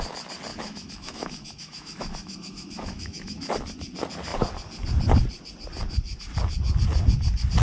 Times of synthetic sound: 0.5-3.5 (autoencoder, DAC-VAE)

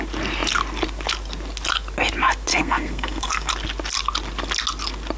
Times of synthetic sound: 2.5-3.5 (codec, SNAC)

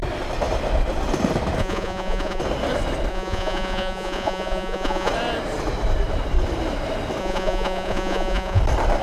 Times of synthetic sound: 1.6-2.4 (vocoder, Vocos); 3.1-5.1; 7.2-8.6

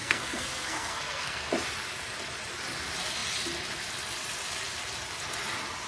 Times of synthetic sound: 0.0-1.5 (codec, SNAC)